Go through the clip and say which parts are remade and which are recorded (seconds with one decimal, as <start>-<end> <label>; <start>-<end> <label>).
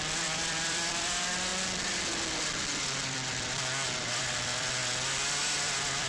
0.0-1.5 remade; 1.5-2.8 recorded; 2.8-4.8 remade; 4.8-5.6 recorded; 5.6-6.1 remade